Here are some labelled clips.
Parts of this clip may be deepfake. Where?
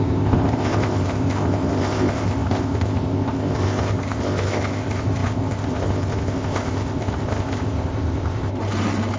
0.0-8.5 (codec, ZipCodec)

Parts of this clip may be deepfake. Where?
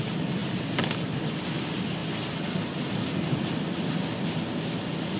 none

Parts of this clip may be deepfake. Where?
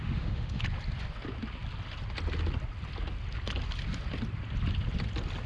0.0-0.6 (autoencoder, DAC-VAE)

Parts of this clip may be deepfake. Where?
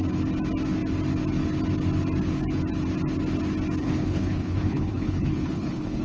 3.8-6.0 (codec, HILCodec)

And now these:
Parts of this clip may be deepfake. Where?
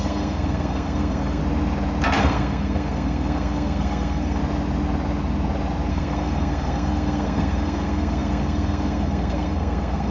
0.0-1.4 (codec, SNAC); 2.2-4.4; 5.9-10.1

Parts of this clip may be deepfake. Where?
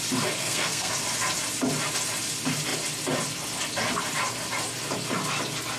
0.4-0.9 (codec, SNAC)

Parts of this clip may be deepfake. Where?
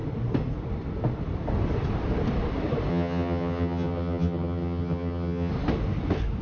2.9-5.5 (vocoder, HiFi-GAN)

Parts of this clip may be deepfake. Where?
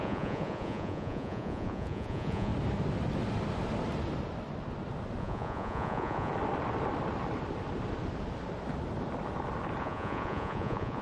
0.0-2.5 (vocoder, Vocos); 5.2-6.3; 9.8-11.0